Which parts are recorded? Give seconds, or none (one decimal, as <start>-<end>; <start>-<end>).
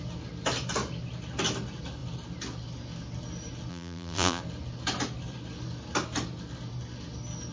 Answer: 0.0-3.7; 4.4-7.5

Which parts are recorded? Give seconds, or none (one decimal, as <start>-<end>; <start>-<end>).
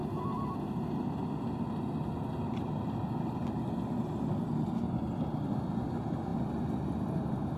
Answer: 0.0-7.6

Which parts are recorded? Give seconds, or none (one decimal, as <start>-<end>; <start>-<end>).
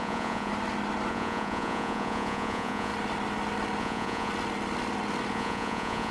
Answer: 0.5-1.1; 2.9-3.8; 4.3-5.3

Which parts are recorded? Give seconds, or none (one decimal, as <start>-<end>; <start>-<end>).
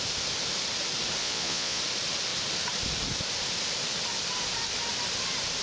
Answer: 0.0-1.2; 1.8-5.6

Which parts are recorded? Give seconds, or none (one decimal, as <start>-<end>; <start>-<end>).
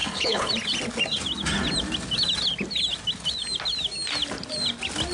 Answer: 0.5-5.1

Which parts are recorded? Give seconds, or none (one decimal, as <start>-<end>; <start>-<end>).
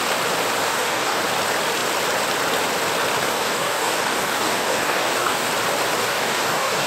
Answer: 0.0-0.6; 1.2-3.3; 5.5-6.0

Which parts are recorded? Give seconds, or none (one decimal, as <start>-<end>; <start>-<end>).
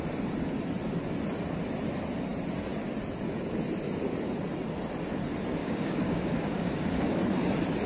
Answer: 0.0-5.6; 7.2-7.9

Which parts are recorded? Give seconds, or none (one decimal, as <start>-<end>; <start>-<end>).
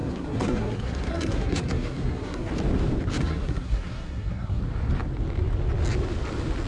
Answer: 2.5-3.2; 4.6-6.7